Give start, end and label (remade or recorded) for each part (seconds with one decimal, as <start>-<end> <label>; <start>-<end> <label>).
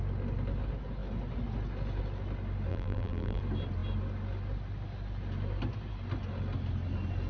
0.0-2.7 recorded; 2.7-3.4 remade; 3.4-7.3 recorded